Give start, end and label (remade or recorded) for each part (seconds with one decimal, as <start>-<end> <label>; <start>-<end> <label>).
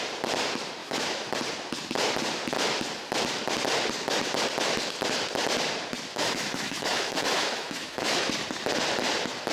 0.0-0.8 recorded; 0.8-1.3 remade; 1.3-6.1 recorded; 6.1-8.3 remade; 8.3-9.5 recorded